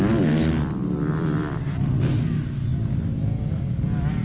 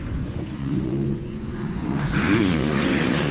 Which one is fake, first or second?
second